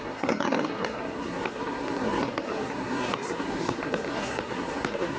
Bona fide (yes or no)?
no